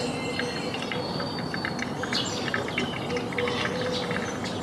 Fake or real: real